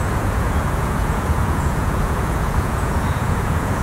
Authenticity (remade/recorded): remade